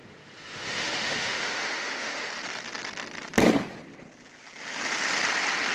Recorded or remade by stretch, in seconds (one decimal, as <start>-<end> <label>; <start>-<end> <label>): 0.0-2.3 remade; 2.3-5.7 recorded